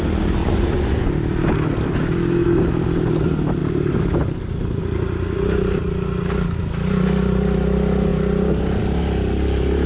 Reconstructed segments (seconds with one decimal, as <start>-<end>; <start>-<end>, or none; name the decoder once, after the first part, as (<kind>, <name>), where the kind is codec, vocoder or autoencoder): 0.4-1.1 (vocoder, Vocos)